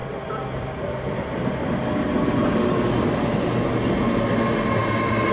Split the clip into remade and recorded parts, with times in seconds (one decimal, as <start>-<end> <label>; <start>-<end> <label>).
0.0-5.3 recorded